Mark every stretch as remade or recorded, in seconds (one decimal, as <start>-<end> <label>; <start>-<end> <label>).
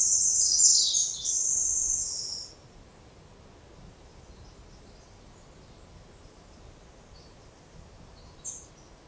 0.0-9.1 recorded